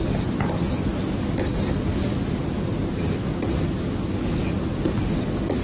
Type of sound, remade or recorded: recorded